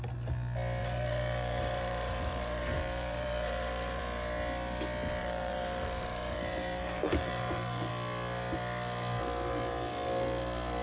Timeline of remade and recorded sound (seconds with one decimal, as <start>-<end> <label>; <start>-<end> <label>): 0.0-0.8 recorded; 0.8-4.0 remade; 4.0-5.2 recorded; 5.2-7.9 remade; 7.9-10.8 recorded